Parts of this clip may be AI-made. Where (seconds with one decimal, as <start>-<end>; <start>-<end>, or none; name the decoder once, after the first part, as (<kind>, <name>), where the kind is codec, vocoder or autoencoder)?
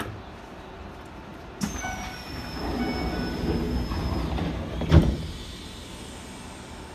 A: 1.3-2.7 (vocoder, BigVGAN v2)